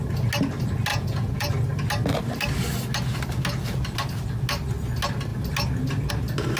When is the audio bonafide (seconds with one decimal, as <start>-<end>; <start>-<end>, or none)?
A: 0.0-0.9; 1.5-6.6